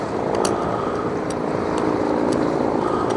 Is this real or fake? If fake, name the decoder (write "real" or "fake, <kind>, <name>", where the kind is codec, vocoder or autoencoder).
fake, vocoder, BigVGAN v2